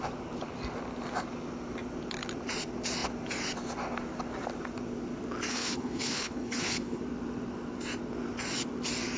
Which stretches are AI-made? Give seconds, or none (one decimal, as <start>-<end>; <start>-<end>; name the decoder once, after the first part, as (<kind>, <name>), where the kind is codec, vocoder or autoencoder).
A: 5.5-7.0 (codec, HILCodec)